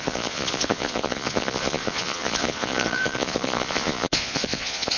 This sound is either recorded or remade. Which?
remade